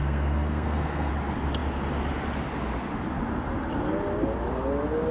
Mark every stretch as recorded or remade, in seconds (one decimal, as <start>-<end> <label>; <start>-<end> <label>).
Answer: 0.0-1.1 remade; 1.1-5.1 recorded